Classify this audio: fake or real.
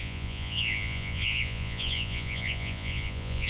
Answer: fake